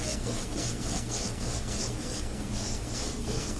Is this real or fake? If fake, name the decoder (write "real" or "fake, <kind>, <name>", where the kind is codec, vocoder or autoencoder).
fake, codec, SNAC